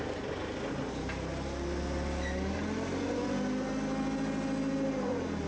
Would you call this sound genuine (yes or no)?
yes